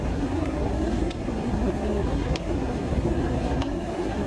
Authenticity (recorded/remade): remade